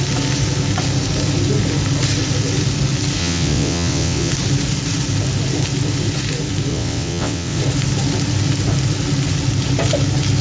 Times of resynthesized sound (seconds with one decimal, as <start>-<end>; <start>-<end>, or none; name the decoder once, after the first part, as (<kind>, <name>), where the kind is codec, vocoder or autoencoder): 3.2-4.3 (vocoder, WaveNeXt); 6.7-7.6